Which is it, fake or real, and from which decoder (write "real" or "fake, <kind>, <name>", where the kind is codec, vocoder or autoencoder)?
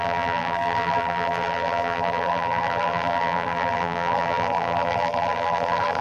fake, vocoder, BigVGAN v2